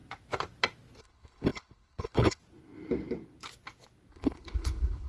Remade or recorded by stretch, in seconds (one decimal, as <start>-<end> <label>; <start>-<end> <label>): 0.0-1.0 recorded; 1.0-2.4 remade; 2.4-4.1 recorded; 4.1-5.1 remade